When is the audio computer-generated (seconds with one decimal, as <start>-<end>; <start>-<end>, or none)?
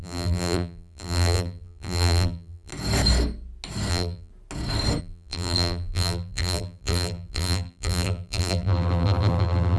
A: 0.0-2.7; 3.9-4.3; 5.0-9.8